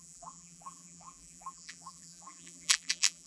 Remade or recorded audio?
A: remade